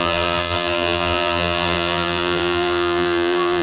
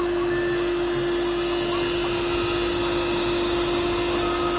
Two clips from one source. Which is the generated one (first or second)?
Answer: first